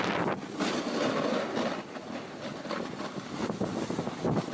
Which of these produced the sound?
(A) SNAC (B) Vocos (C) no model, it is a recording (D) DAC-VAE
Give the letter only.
C